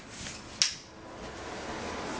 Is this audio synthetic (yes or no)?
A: no